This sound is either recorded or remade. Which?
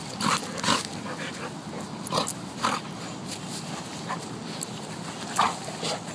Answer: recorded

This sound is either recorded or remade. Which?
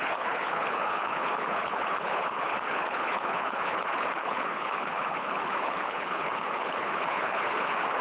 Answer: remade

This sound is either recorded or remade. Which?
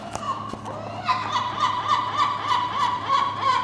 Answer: recorded